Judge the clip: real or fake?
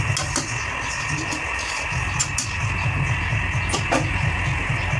real